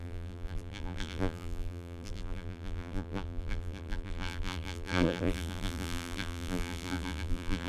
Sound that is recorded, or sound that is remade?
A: remade